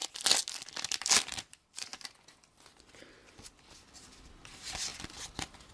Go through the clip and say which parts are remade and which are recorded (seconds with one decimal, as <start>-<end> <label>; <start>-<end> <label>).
0.0-1.4 recorded; 1.4-1.9 remade; 1.9-2.7 recorded; 2.7-4.9 remade; 4.9-5.7 recorded